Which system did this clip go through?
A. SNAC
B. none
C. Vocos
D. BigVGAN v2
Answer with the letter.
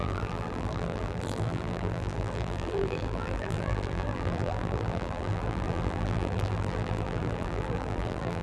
D